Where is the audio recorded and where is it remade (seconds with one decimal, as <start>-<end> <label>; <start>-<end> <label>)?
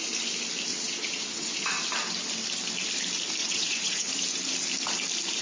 0.0-0.7 recorded; 0.7-1.8 remade; 1.8-3.4 recorded; 3.4-4.1 remade; 4.1-5.4 recorded